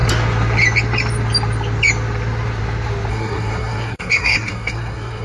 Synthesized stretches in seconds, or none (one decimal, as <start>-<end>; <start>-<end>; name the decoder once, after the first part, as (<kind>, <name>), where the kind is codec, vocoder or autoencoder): 3.1-5.2 (codec, SNAC)